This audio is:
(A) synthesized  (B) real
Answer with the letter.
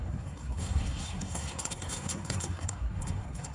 A